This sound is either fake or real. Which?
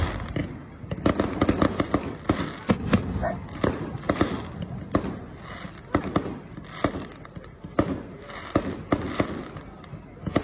real